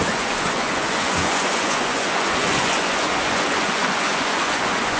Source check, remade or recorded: remade